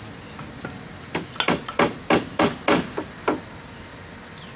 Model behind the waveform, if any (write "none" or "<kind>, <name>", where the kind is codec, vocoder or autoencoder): none